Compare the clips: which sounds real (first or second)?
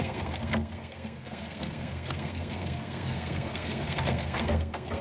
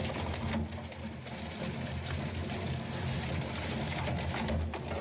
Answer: second